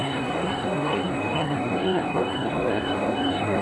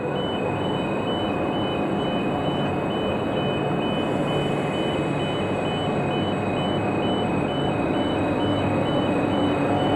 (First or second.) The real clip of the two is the second